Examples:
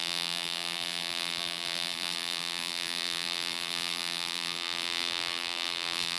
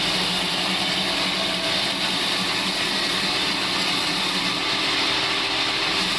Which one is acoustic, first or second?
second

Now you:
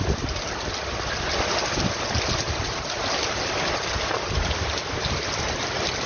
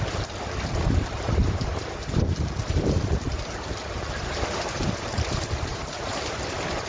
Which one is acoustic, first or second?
first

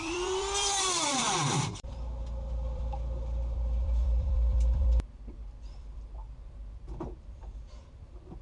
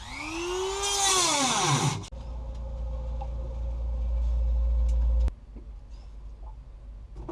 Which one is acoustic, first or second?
second